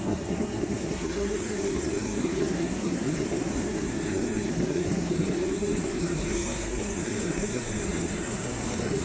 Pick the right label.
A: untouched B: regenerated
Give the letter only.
B